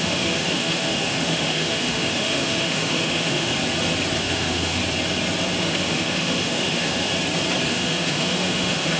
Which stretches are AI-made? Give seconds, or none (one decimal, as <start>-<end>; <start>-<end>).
0.0-3.5; 4.2-4.8; 5.6-7.1; 7.7-9.0